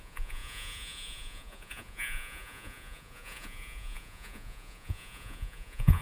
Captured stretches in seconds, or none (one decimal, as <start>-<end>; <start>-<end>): none